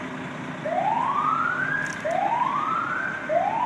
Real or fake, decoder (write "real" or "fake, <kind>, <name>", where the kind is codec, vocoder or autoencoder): real